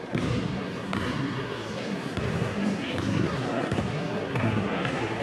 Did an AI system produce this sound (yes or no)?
yes